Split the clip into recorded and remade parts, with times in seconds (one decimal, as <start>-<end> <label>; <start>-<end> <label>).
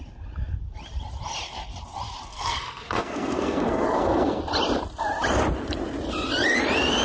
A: 0.0-2.3 recorded; 2.3-4.4 remade; 4.4-7.0 recorded